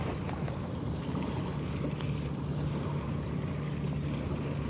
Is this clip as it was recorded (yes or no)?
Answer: yes